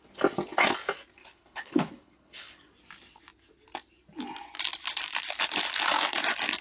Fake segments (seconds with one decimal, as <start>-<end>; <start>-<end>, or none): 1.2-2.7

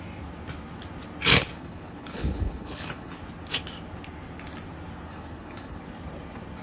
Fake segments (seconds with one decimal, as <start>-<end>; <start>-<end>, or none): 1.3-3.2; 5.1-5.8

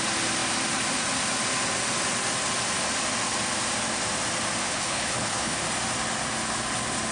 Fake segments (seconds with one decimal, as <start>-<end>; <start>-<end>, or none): 4.6-5.6